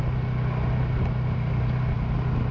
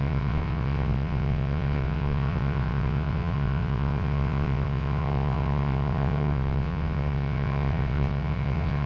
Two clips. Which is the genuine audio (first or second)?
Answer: first